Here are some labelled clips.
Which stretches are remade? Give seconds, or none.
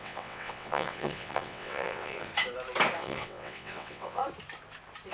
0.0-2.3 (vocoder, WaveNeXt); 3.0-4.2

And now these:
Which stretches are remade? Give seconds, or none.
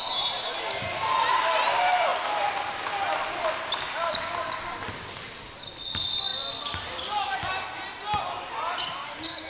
none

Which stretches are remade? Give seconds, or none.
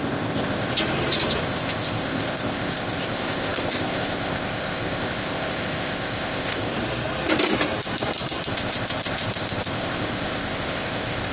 0.0-0.7 (codec, ZipCodec); 1.4-6.7; 8.5-11.3